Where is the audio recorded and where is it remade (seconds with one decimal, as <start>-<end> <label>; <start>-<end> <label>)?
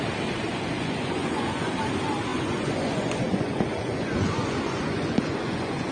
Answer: 0.0-0.5 recorded; 0.5-1.7 remade; 1.7-2.3 recorded; 2.3-5.9 remade